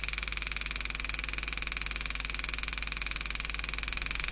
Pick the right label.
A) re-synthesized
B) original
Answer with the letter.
B